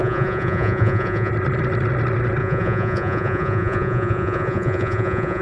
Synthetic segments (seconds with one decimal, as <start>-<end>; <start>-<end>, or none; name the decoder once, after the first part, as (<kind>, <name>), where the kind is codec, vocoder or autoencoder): 0.0-1.3 (vocoder, Vocos); 2.4-5.4